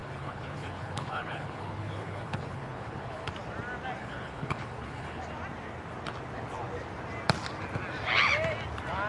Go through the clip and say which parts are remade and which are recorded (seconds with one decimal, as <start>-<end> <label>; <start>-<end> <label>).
0.0-3.3 remade; 3.3-4.0 recorded; 4.0-5.2 remade; 5.2-9.1 recorded